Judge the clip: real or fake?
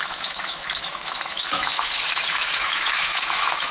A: fake